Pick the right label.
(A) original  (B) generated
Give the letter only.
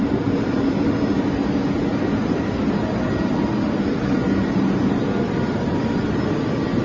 A